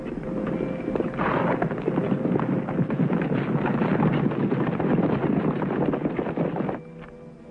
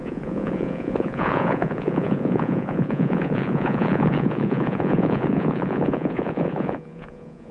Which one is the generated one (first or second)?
second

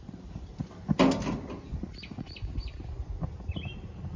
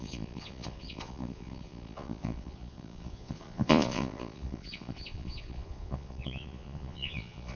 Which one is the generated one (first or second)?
second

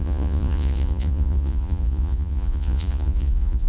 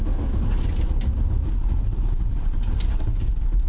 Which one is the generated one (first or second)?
first